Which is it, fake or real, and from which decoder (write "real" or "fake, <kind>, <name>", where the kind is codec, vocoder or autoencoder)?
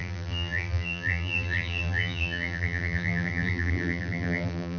fake, vocoder, BigVGAN v2